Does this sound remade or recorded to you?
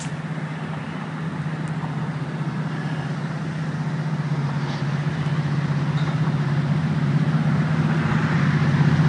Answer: recorded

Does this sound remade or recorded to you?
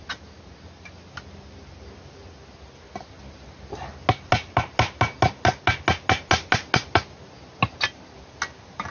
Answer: recorded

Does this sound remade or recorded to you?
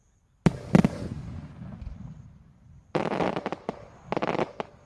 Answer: recorded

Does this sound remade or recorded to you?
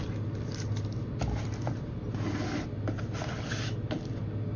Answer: recorded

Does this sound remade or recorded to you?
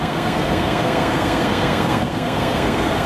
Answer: remade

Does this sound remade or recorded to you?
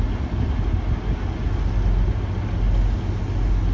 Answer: recorded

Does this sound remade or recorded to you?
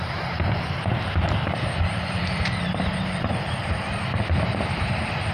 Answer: remade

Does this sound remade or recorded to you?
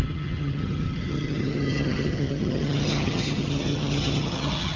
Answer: remade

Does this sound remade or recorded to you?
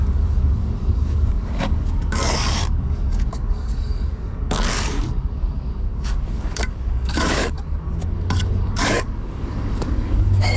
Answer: remade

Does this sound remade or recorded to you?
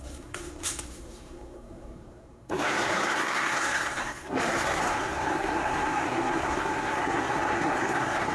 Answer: remade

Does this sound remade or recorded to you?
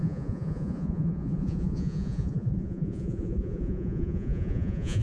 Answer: remade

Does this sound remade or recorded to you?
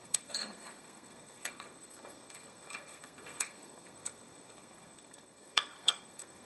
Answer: remade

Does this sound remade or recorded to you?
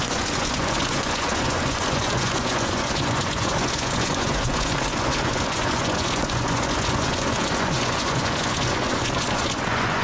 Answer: remade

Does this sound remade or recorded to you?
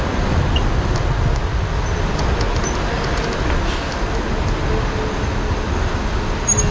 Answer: recorded